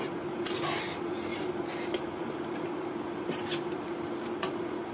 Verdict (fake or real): real